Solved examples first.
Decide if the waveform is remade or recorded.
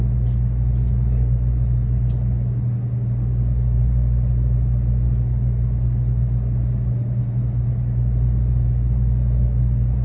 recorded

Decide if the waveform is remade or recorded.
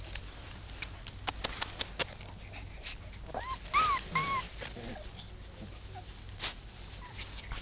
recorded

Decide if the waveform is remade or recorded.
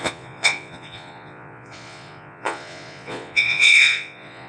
remade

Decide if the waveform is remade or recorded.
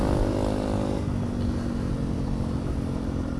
recorded